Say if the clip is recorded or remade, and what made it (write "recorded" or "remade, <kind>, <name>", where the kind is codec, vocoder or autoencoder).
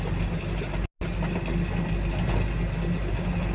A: recorded